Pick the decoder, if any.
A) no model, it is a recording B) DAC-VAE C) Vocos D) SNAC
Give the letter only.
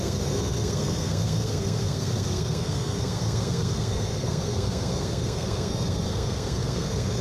D